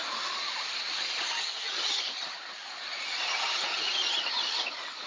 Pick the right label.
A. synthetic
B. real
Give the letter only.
B